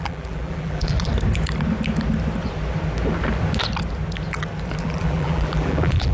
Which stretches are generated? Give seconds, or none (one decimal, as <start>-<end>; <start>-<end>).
0.0-1.1; 4.8-6.1